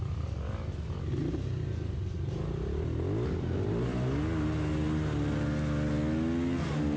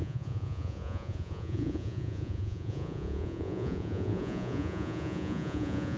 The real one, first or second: first